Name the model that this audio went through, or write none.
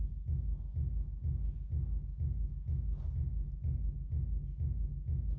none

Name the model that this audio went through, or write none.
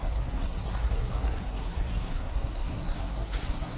codec, SNAC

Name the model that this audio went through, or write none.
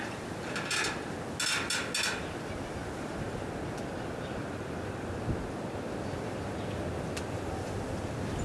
none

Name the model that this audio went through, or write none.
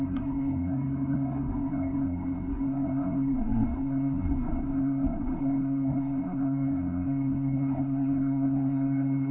codec, SNAC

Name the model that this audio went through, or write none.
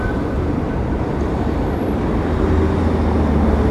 none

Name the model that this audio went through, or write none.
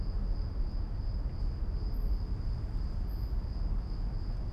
none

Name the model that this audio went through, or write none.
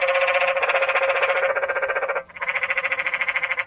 none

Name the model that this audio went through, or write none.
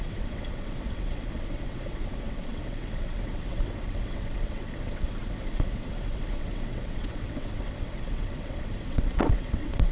vocoder, WaveNeXt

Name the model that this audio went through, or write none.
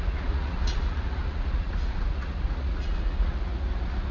vocoder, Vocos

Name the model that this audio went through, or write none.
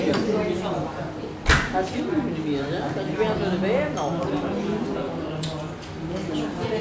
none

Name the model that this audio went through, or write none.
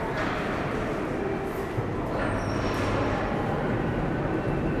none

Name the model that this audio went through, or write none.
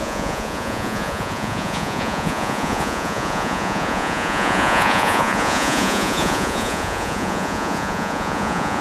vocoder, Vocos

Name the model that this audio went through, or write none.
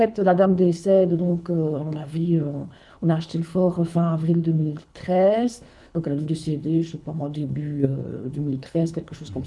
codec, HILCodec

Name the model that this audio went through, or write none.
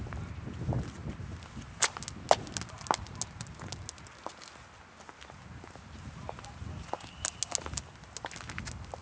none